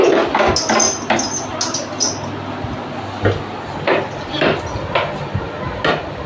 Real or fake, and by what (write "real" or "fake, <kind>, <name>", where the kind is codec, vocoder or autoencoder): real